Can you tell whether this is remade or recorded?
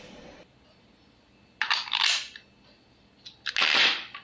recorded